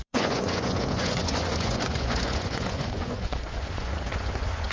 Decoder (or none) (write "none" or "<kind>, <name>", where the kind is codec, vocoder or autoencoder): vocoder, Vocos